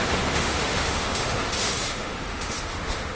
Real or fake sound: fake